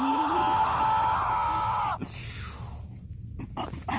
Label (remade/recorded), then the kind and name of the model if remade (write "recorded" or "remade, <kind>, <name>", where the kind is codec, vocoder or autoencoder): recorded